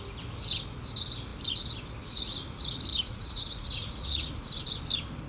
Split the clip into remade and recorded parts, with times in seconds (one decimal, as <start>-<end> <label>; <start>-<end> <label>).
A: 0.0-2.9 recorded; 2.9-4.3 remade; 4.3-5.3 recorded